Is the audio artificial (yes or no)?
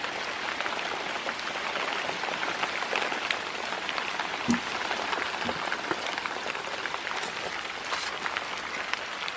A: no